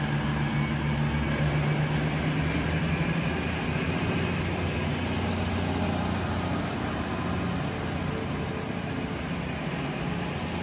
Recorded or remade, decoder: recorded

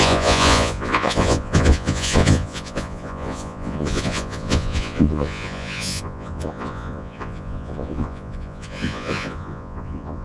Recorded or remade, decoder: remade, vocoder, Vocos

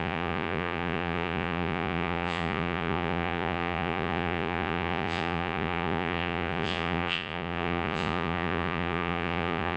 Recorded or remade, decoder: remade, vocoder, Vocos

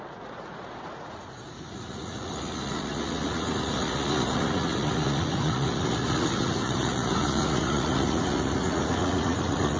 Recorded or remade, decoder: remade, vocoder, Vocos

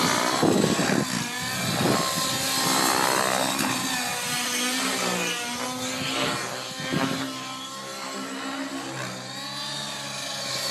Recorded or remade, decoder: recorded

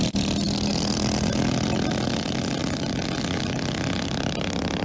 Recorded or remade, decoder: recorded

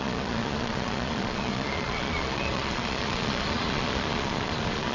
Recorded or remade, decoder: remade, vocoder, Vocos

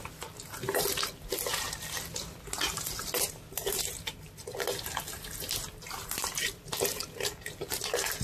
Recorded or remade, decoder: recorded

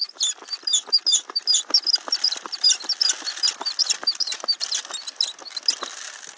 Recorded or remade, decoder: recorded